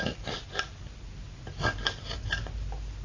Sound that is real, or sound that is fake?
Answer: real